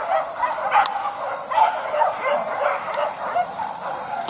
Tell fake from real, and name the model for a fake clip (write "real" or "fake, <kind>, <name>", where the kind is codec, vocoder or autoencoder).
real